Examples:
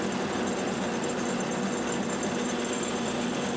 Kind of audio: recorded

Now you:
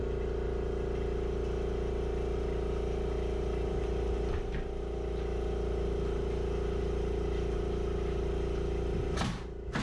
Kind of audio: recorded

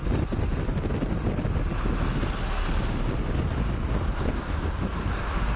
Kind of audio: recorded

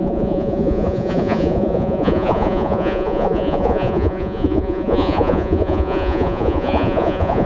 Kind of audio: remade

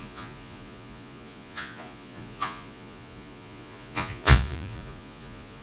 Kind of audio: remade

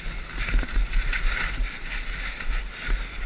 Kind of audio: recorded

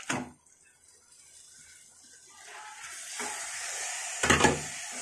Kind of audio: recorded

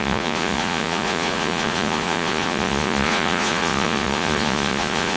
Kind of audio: remade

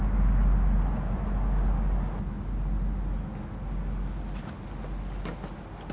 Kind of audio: recorded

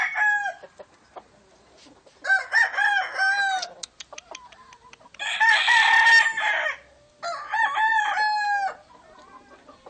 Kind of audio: recorded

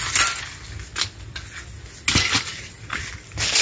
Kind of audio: recorded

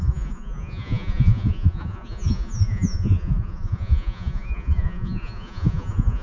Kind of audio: remade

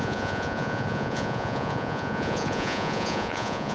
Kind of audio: remade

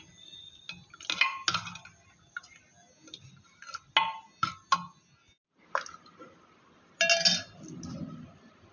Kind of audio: recorded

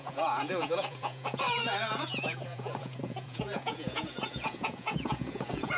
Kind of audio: remade